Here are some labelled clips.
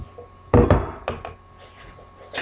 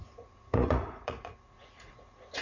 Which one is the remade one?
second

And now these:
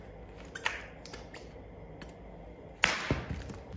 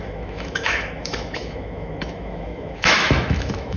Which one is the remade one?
second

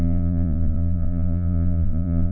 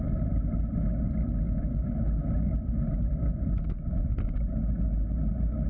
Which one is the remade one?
first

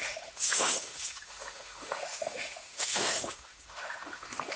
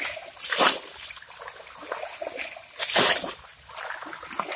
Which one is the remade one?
first